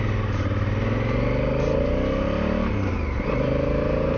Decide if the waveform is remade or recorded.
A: recorded